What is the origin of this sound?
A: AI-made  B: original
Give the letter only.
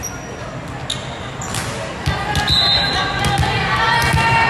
B